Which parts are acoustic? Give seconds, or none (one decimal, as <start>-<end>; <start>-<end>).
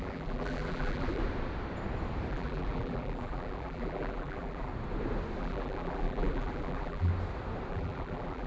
1.2-2.3; 4.7-5.4; 7.1-7.7